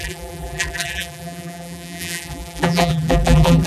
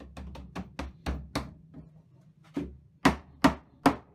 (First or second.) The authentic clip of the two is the second